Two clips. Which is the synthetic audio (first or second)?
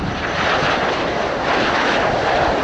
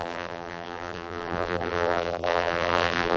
second